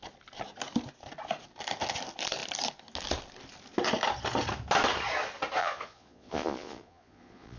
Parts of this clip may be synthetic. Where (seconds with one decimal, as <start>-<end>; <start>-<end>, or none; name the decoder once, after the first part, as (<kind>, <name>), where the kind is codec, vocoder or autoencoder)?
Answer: 5.6-7.6 (vocoder, Vocos)